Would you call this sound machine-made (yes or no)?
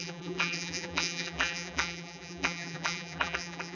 yes